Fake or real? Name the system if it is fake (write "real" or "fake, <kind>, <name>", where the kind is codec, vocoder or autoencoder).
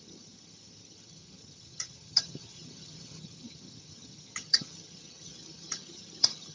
fake, vocoder, HiFi-GAN